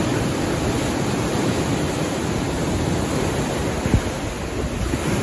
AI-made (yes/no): no